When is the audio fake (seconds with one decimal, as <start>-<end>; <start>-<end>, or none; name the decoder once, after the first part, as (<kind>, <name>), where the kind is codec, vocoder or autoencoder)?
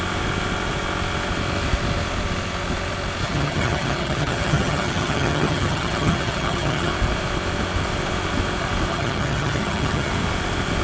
3.2-6.9 (vocoder, HiFi-GAN); 8.9-10.1